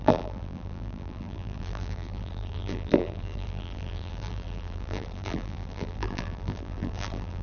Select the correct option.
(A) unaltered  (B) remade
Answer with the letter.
B